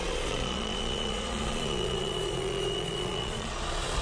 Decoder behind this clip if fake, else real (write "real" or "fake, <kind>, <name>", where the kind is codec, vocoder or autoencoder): fake, vocoder, Vocos